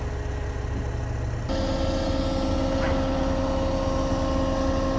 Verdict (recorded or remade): recorded